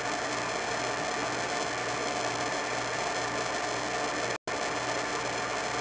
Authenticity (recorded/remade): recorded